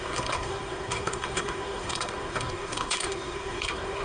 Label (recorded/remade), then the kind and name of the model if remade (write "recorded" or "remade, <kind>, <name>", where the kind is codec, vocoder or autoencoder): remade, codec, SNAC